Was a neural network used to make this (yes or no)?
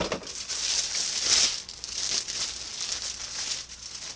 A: no